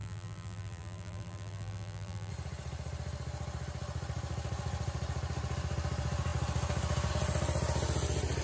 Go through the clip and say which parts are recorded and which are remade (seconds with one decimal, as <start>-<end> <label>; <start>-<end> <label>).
0.0-2.3 remade; 2.3-8.4 recorded